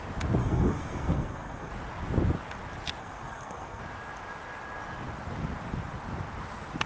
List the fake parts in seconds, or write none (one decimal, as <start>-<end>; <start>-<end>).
0.4-1.7; 3.0-3.8